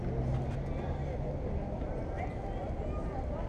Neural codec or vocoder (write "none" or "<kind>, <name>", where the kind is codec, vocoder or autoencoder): none